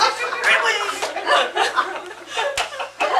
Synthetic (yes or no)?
no